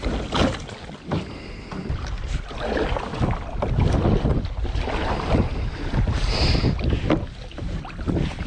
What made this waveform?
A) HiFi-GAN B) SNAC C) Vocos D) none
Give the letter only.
D